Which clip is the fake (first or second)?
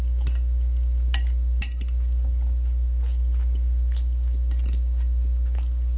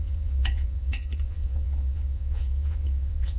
second